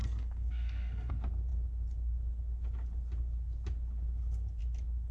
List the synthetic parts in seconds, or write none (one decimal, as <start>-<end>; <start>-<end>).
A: 0.0-1.1

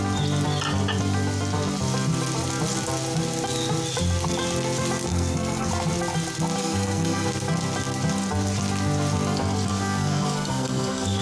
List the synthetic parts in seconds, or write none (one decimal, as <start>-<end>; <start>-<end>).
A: 5.1-5.7; 6.6-7.3; 9.7-11.2

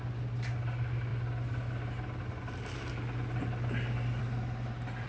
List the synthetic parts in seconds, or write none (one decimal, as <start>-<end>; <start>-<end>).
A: none

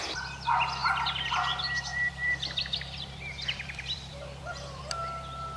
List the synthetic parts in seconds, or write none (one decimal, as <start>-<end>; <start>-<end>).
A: 1.9-4.8

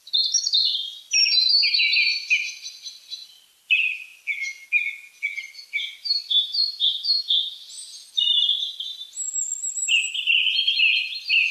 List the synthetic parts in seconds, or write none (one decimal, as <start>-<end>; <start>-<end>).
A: none

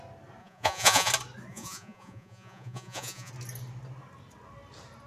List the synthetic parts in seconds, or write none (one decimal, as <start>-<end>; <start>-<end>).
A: 0.4-1.1; 1.5-3.3

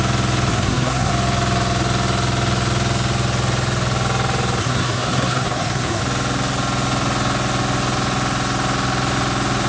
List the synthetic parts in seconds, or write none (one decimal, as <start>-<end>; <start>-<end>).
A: 0.5-1.1; 4.6-6.0

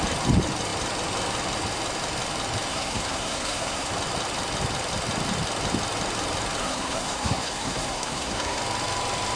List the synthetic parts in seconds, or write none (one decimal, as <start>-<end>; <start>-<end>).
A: 2.7-3.9; 6.6-8.6